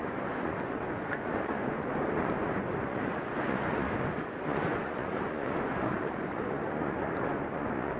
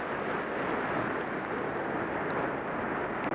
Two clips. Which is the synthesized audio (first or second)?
first